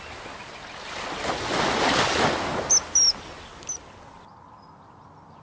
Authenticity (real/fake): real